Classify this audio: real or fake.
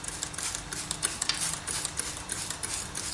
real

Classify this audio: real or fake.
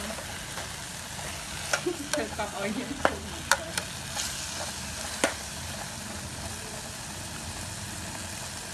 real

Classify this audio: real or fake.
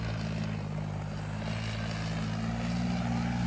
real